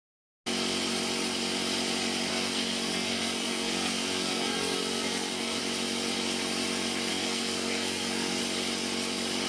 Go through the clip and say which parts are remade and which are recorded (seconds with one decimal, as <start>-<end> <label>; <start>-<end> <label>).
0.0-2.3 recorded; 2.3-5.6 remade; 5.6-7.1 recorded; 7.1-8.4 remade; 8.4-9.5 recorded